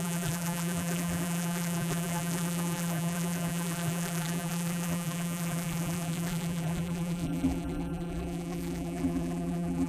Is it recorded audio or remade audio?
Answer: remade